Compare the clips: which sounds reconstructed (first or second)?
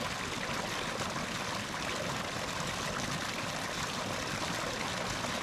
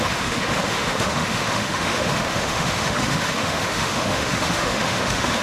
second